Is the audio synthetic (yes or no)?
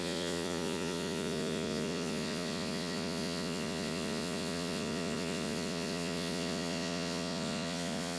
yes